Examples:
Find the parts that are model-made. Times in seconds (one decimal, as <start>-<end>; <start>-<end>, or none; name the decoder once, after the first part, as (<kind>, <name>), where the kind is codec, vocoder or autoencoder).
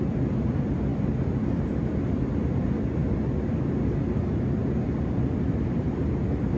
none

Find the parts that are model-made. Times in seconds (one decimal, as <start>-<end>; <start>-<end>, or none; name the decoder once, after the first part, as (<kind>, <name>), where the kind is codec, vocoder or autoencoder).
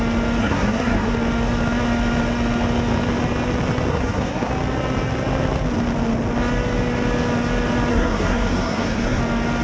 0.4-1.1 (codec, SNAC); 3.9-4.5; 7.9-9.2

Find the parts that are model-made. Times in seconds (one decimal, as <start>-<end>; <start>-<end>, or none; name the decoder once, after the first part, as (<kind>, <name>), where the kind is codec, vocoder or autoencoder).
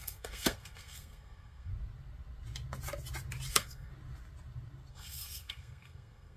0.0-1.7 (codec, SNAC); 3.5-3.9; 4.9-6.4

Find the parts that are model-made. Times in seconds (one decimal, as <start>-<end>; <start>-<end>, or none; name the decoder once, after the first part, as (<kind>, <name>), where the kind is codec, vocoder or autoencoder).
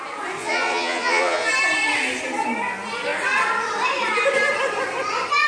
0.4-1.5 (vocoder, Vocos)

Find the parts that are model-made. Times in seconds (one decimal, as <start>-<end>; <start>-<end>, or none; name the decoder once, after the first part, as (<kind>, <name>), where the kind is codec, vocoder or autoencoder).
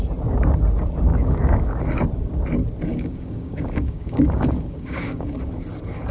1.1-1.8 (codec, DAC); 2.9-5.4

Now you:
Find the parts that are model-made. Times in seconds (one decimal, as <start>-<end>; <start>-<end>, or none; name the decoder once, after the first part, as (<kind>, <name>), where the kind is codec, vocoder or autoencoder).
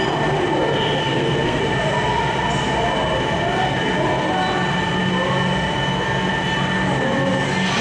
1.0-1.6 (codec, SNAC)